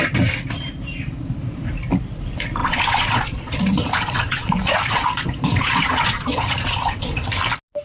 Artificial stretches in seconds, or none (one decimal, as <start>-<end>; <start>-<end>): 2.6-7.3